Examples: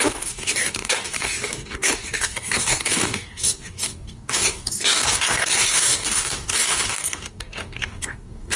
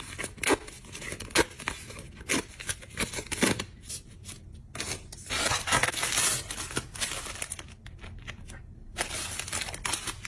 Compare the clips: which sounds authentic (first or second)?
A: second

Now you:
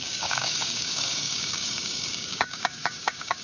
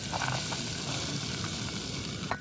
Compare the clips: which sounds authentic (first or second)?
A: second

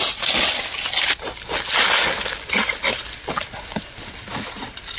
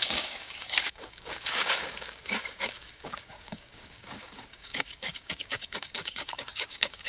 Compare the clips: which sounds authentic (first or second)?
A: first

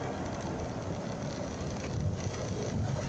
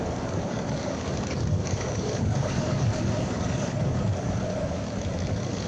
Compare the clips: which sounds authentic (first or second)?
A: first